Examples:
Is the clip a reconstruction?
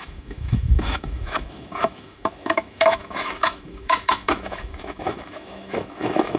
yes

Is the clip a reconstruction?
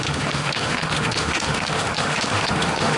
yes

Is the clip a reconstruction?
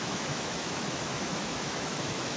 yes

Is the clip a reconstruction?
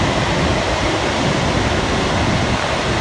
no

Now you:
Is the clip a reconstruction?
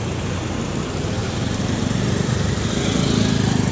no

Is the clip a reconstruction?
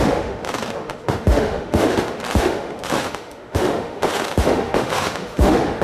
yes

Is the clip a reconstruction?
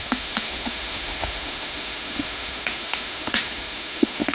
yes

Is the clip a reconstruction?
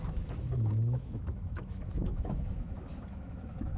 yes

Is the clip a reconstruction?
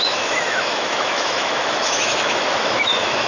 yes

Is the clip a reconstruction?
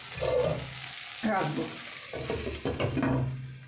no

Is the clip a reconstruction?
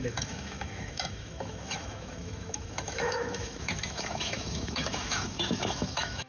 yes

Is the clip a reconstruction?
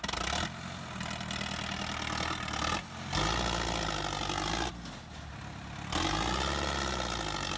no